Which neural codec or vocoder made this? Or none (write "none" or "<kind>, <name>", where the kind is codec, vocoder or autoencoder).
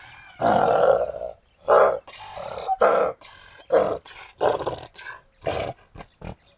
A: none